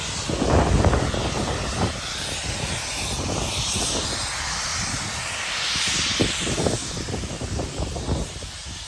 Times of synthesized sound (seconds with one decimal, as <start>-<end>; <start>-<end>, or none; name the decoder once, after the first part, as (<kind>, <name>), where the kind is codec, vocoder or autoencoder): 6.8-7.6 (vocoder, BigVGAN v2)